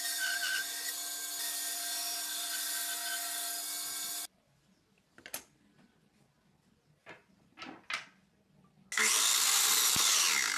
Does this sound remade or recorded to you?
recorded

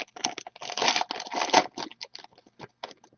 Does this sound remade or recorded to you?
recorded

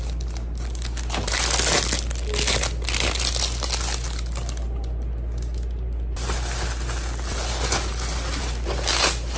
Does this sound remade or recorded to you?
recorded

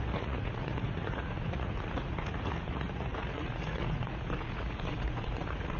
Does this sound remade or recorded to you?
remade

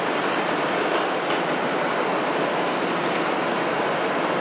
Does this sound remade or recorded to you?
recorded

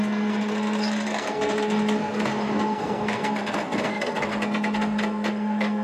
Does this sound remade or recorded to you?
remade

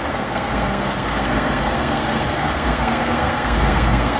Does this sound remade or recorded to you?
remade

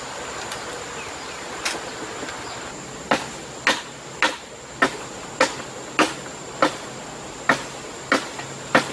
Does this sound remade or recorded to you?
recorded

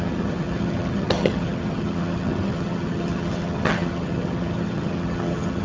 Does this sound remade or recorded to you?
remade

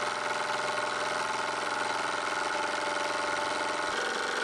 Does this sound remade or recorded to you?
recorded